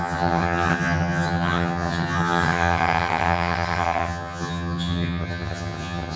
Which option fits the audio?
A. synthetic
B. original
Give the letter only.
A